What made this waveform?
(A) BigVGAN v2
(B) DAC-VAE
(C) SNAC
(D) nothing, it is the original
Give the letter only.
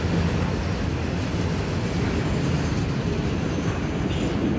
D